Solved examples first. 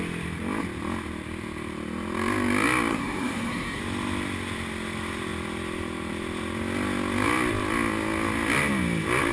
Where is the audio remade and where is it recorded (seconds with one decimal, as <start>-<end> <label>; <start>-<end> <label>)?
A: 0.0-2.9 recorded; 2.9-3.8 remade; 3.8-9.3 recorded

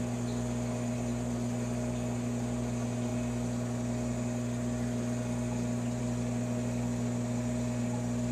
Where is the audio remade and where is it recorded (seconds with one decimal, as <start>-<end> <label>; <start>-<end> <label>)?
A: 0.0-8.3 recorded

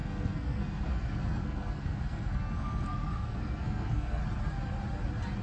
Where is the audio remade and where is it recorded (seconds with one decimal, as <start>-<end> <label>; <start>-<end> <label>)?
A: 0.0-4.2 remade; 4.2-5.4 recorded

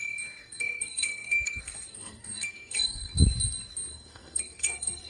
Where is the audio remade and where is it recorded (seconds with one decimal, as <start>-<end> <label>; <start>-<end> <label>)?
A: 0.0-0.4 recorded; 0.4-3.1 remade; 3.1-3.9 recorded; 3.9-5.1 remade

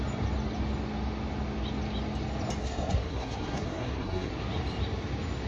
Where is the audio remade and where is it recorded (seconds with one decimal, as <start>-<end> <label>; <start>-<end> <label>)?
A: 0.0-2.6 recorded; 2.6-4.3 remade; 4.3-5.5 recorded

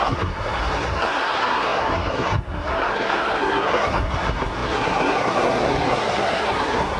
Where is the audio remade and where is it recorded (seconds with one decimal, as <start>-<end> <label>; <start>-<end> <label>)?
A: 0.0-7.0 remade

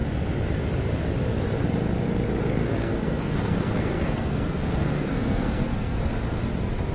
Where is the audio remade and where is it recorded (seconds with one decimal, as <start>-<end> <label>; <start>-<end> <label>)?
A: 0.0-2.6 recorded; 2.6-6.0 remade; 6.0-6.9 recorded